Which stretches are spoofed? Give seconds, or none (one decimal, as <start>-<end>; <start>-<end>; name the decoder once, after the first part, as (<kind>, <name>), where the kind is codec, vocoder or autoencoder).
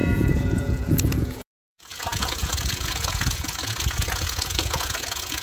0.0-5.4 (vocoder, Vocos)